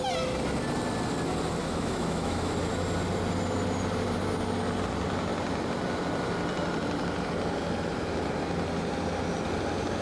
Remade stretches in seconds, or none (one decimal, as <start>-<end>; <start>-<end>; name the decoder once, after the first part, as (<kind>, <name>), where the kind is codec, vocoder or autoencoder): 1.6-2.5 (autoencoder, DAC-VAE)